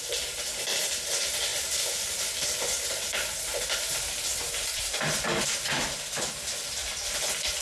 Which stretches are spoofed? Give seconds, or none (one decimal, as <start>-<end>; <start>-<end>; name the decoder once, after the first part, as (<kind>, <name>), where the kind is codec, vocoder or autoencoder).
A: 1.5-6.1 (vocoder, BigVGAN v2)